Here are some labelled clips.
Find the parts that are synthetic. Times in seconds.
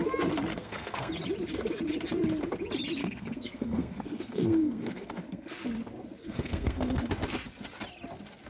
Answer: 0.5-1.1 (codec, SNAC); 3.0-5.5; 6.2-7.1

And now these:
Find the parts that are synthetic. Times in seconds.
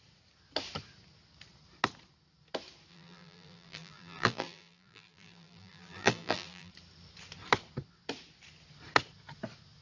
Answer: 2.9-6.7 (vocoder, BigVGAN v2)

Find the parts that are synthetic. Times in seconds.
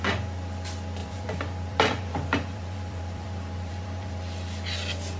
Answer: 1.0-4.1 (vocoder, BigVGAN v2)